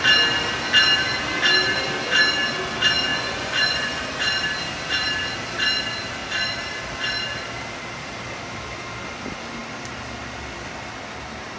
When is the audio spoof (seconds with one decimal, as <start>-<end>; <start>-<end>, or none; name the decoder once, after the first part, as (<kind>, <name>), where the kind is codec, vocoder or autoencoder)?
3.1-4.0 (vocoder, Vocos)